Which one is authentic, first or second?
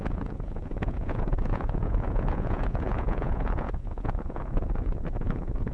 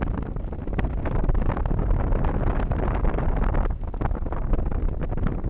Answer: second